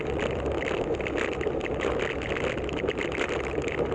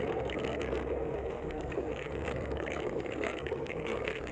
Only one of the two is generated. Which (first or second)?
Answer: second